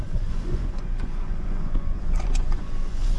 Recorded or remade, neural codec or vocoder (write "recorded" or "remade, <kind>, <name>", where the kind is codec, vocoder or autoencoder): remade, vocoder, Vocos